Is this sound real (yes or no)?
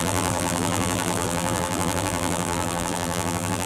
no